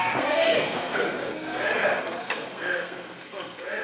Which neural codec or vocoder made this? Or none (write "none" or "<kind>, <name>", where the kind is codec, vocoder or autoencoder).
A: codec, SNAC